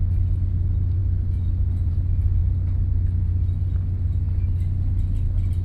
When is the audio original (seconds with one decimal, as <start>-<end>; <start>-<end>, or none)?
0.0-5.6